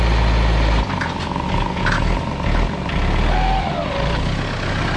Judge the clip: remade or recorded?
recorded